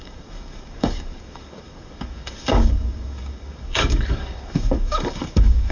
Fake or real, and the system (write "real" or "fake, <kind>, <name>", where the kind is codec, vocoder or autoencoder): fake, codec, DAC